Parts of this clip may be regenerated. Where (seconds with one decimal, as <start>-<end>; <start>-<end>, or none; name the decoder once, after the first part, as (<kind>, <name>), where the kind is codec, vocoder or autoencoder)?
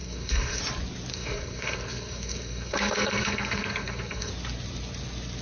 0.0-0.6 (codec, SNAC); 1.1-4.3